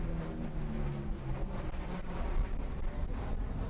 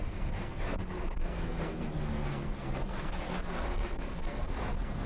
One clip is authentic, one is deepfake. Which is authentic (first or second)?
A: first